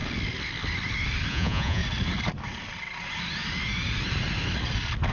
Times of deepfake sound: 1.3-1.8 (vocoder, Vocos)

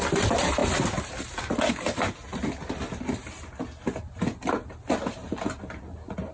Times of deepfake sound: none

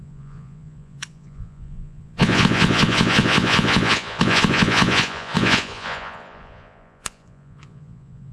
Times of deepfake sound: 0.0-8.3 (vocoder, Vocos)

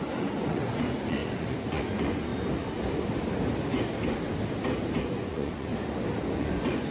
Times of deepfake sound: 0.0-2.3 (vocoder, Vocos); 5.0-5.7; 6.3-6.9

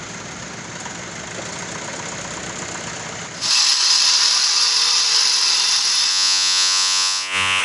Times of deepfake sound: 6.1-7.6 (vocoder, Vocos)

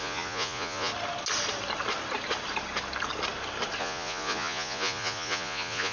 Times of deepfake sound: 0.0-0.9 (vocoder, Vocos); 3.8-5.9

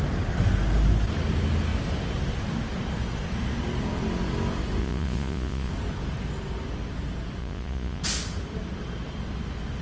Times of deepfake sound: 4.8-5.7 (vocoder, Vocos); 7.4-8.0